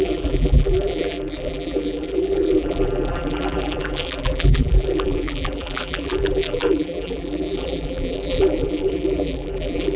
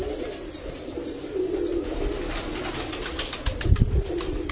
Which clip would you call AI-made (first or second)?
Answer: first